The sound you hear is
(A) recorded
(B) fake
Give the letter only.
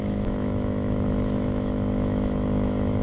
B